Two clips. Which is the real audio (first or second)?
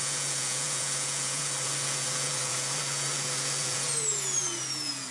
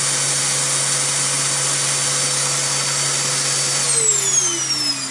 second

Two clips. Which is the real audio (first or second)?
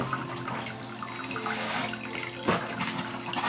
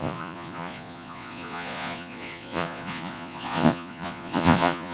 first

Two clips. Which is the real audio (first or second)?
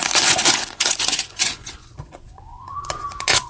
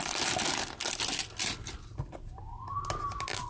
second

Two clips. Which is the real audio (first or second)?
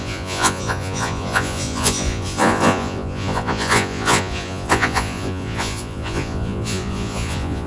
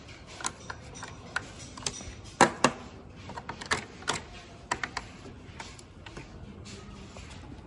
second